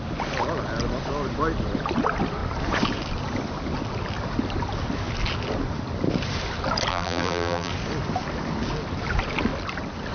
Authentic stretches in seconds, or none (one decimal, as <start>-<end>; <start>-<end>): 0.0-6.9; 7.7-10.1